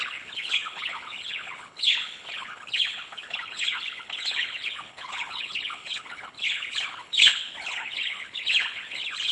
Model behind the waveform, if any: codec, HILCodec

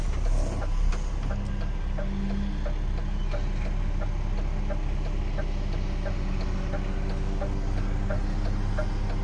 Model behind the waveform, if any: none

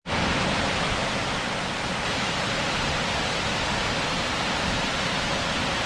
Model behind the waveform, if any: none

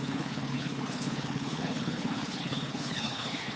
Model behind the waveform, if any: codec, HILCodec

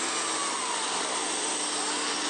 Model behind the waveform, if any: none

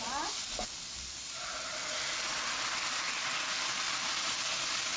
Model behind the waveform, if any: none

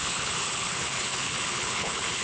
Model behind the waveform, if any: codec, HILCodec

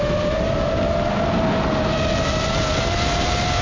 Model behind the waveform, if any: none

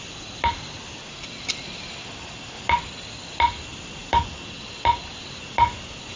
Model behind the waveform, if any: none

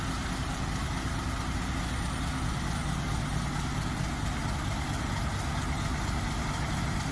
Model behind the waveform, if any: none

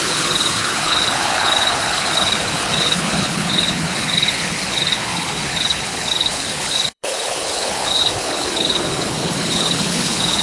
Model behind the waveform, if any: codec, HILCodec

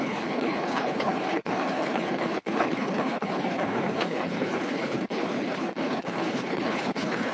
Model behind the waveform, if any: codec, HILCodec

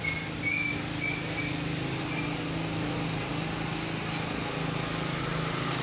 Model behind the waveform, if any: none